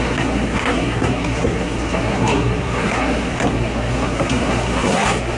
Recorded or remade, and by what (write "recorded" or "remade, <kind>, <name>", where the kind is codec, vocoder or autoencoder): remade, codec, SNAC